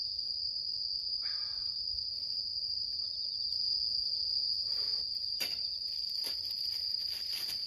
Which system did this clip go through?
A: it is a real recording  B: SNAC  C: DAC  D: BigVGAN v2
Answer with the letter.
A